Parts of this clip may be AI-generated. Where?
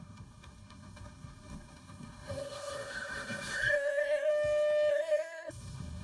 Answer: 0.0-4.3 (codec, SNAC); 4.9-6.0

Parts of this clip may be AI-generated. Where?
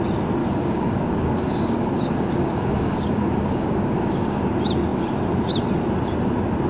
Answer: 0.4-4.4 (codec, DAC)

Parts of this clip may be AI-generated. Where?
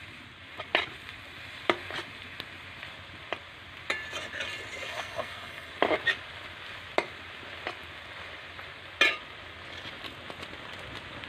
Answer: 4.8-5.7 (codec, SNAC)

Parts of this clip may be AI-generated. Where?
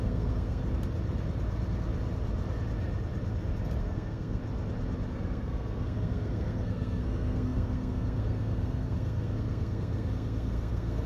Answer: 0.0-0.6 (codec, SNAC); 3.8-4.4; 5.1-11.1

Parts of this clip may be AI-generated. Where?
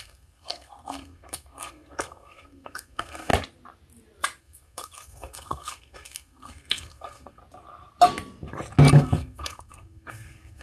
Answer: 0.0-3.3 (codec, SNAC); 4.4-7.4; 8.9-10.6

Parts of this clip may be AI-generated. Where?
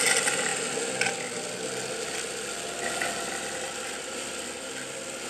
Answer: none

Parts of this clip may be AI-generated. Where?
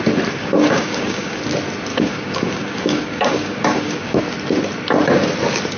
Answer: 0.4-1.4 (codec, DAC); 1.9-4.2